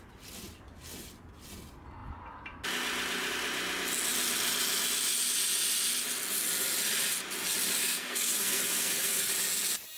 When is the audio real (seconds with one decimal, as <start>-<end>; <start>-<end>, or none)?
0.0-7.8; 9.3-10.0